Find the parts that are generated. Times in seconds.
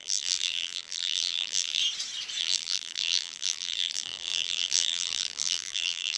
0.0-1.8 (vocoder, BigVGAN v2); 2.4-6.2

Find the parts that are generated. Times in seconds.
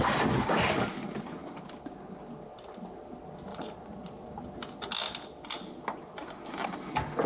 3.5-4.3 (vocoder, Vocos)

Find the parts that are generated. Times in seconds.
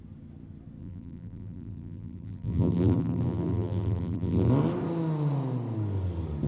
0.8-4.5 (vocoder, BigVGAN v2)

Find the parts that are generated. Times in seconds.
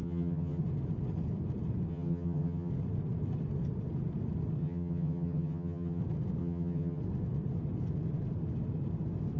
0.0-0.6 (vocoder, HiFi-GAN); 1.9-2.7; 4.6-6.0; 6.4-7.0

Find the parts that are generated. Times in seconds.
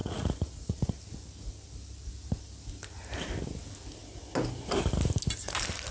0.0-0.9 (vocoder, Vocos)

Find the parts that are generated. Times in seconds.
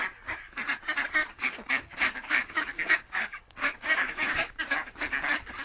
1.2-4.6 (codec, DAC)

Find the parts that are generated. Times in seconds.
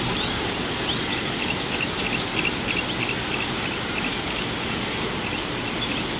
none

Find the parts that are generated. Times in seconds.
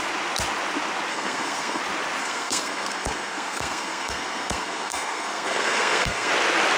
1.1-1.8 (codec, SNAC); 2.2-6.3